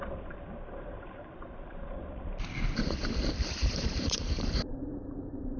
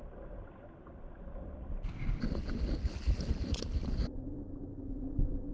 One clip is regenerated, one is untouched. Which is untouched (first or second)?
second